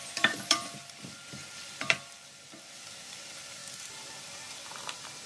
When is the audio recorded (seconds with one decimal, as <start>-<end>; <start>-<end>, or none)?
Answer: 3.6-4.1